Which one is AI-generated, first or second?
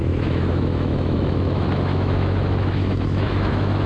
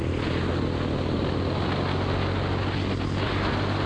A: first